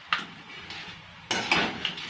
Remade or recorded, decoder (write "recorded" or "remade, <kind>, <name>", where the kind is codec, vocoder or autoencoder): recorded